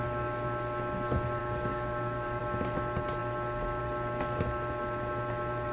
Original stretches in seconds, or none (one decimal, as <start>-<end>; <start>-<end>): 0.0-1.4; 2.4-5.7